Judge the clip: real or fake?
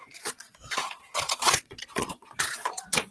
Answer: fake